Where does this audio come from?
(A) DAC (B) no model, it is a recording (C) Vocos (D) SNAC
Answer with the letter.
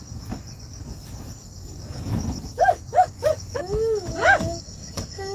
A